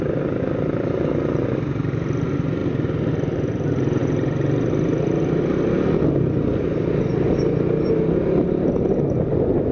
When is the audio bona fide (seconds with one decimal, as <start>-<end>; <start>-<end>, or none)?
0.0-9.7